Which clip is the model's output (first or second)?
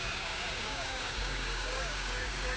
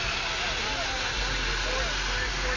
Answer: first